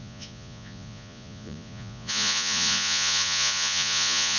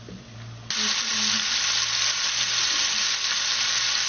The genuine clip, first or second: second